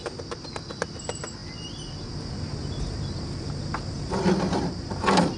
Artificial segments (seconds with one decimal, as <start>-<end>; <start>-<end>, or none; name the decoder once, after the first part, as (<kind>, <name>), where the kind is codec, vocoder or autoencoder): none